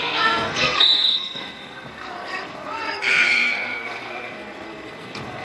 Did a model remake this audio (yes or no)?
yes